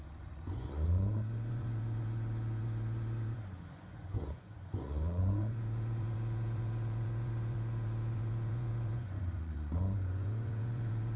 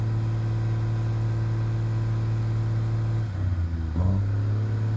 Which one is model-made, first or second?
first